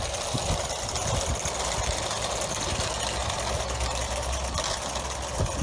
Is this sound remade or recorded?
recorded